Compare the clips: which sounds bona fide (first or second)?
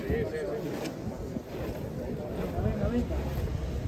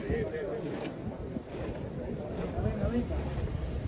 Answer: first